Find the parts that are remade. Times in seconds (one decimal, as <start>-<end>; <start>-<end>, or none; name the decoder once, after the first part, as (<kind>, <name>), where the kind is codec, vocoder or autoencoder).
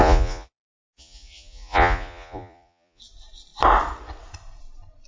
0.0-3.0 (vocoder, Vocos)